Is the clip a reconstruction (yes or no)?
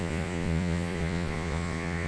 yes